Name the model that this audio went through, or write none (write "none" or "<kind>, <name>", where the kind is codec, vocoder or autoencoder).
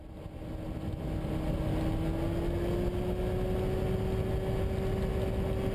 none